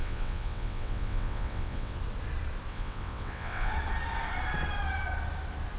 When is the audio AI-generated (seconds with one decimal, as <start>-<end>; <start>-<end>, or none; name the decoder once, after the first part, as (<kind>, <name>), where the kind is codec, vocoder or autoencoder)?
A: 0.0-2.0 (vocoder, WaveNeXt); 2.7-3.7